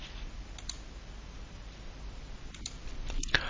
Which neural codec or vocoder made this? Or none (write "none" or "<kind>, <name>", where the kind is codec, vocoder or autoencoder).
none